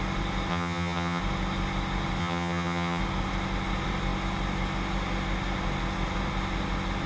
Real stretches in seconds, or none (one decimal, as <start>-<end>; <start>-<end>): 0.0-0.5; 1.2-2.2; 3.0-7.1